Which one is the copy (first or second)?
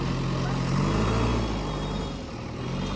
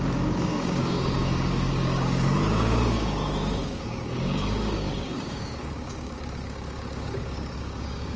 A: second